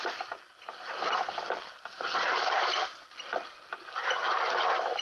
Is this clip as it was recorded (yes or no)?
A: yes